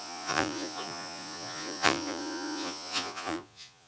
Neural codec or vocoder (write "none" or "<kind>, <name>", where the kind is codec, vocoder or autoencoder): vocoder, Vocos